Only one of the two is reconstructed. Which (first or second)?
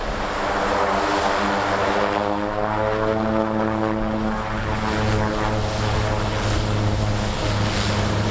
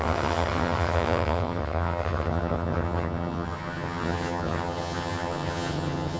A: second